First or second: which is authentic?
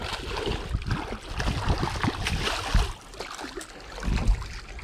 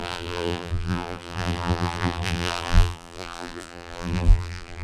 first